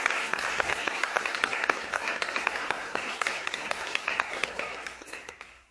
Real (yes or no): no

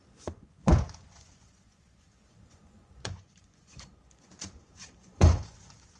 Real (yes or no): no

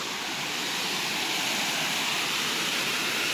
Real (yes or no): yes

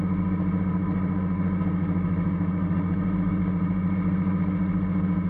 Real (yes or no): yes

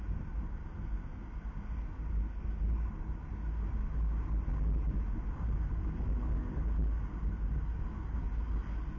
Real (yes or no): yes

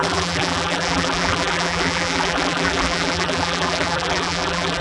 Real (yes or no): no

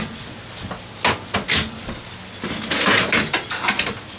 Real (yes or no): yes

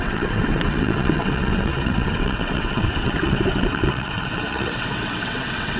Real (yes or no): no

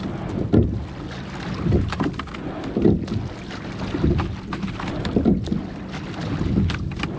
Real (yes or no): yes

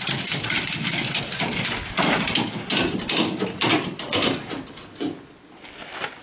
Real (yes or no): yes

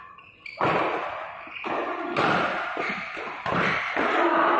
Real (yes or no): yes